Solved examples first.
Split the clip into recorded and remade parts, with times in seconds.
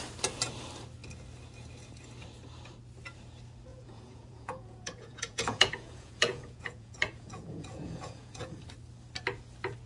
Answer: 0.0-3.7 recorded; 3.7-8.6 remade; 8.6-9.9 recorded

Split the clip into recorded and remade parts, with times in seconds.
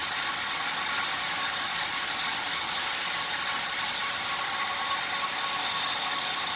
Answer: 0.0-6.6 recorded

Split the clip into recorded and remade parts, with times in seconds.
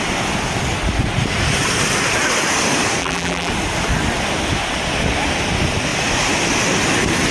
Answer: 0.0-3.0 recorded; 3.0-3.5 remade; 3.5-7.3 recorded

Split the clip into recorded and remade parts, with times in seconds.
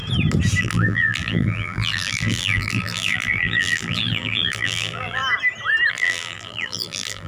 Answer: 0.0-0.6 recorded; 0.6-5.2 remade; 5.2-5.9 recorded; 5.9-7.3 remade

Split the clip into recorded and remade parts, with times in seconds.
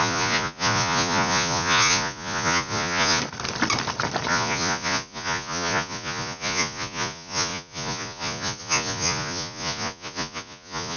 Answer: 0.0-3.2 remade; 3.2-4.3 recorded; 4.3-11.0 remade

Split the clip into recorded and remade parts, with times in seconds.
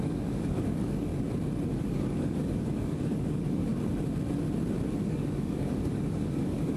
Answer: 0.0-1.1 remade; 1.1-1.7 recorded; 1.7-3.7 remade; 3.7-5.1 recorded; 5.1-6.8 remade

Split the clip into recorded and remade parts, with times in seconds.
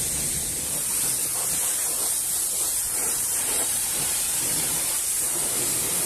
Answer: 0.0-2.8 recorded; 2.8-5.1 remade; 5.1-6.1 recorded